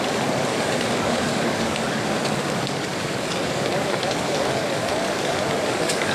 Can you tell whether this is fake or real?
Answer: fake